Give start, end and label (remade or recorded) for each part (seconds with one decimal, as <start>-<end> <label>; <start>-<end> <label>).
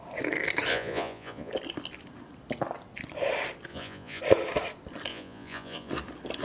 0.0-0.7 recorded; 0.7-1.5 remade; 1.5-3.7 recorded; 3.7-4.2 remade; 4.2-5.1 recorded; 5.1-5.9 remade; 5.9-6.4 recorded